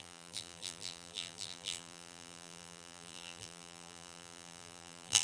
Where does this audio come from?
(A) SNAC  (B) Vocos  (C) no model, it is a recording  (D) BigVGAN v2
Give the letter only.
D